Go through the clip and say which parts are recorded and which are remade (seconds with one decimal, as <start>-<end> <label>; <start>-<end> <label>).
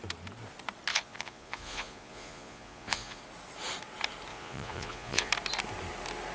0.0-0.9 recorded; 0.9-3.2 remade; 3.2-4.3 recorded; 4.3-5.3 remade; 5.3-6.3 recorded